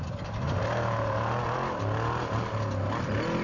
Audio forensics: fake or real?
real